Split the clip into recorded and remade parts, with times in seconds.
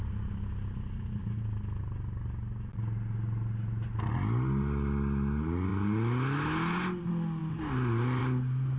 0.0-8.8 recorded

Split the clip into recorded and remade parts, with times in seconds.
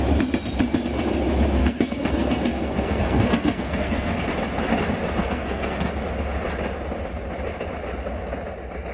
0.0-1.6 recorded; 1.6-4.2 remade; 4.2-5.2 recorded; 5.2-5.9 remade; 5.9-8.9 recorded